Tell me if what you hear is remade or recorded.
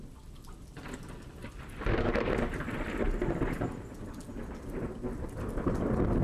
recorded